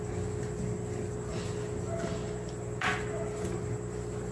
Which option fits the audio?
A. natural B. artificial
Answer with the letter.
A